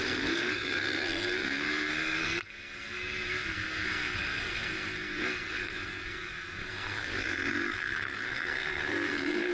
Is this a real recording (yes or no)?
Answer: no